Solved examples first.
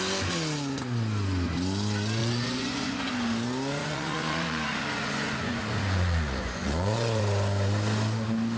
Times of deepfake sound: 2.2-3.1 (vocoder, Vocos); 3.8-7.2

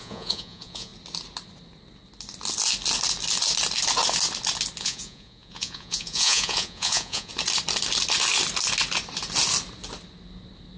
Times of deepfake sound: 0.0-0.9 (vocoder, Vocos); 4.8-7.3

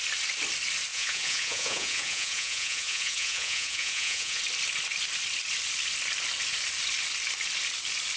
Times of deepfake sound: 0.9-4.4 (vocoder, Vocos)

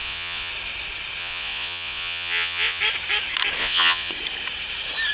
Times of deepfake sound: 0.0-0.5 (vocoder, Vocos); 1.2-2.8; 3.6-4.1

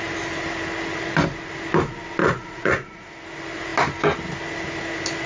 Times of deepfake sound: 2.2-3.1 (vocoder, Vocos)